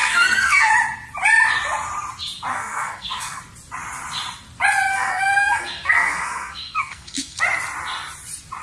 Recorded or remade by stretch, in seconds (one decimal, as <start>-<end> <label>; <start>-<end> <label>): 0.0-0.7 remade; 0.7-2.5 recorded; 2.5-3.4 remade; 3.4-4.9 recorded; 4.9-7.4 remade; 7.4-8.6 recorded

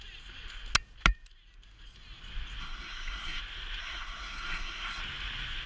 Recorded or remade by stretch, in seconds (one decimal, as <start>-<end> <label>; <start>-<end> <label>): 0.0-2.6 recorded; 2.6-3.4 remade; 3.4-3.8 recorded; 3.8-5.0 remade; 5.0-5.7 recorded

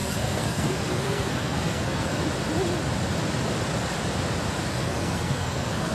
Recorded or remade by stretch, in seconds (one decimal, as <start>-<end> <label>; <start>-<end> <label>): 0.0-2.2 remade; 2.2-4.7 recorded; 4.7-5.9 remade

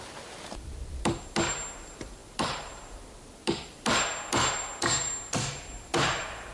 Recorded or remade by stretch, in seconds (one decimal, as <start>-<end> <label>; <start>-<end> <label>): 0.0-6.5 recorded

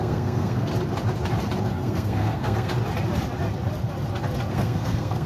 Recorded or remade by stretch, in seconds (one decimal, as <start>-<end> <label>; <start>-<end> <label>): 0.0-0.7 remade; 0.7-1.6 recorded; 1.6-2.7 remade; 2.7-4.5 recorded; 4.5-5.3 remade

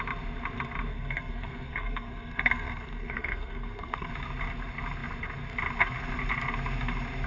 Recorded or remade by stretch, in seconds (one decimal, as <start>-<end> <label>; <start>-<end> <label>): 0.0-0.9 recorded; 0.9-4.1 remade; 4.1-7.3 recorded